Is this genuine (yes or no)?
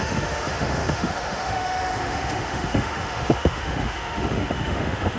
no